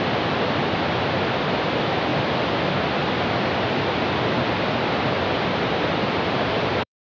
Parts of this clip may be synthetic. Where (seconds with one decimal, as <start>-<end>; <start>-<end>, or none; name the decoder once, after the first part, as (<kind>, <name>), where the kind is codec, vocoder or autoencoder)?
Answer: 0.0-7.1 (vocoder, BigVGAN v2)